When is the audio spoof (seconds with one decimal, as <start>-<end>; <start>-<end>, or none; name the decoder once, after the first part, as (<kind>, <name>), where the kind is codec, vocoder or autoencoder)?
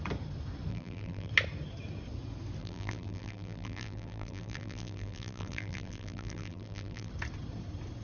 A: 0.7-1.3 (vocoder, BigVGAN v2); 2.6-7.1